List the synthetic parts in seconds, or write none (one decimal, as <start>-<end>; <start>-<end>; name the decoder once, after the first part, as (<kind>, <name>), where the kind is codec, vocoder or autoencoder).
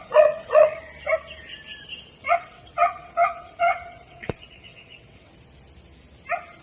0.0-0.8 (vocoder, WaveNeXt); 2.2-5.3